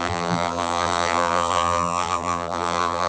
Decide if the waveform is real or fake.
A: fake